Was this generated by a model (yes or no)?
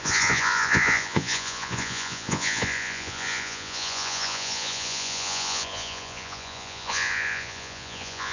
yes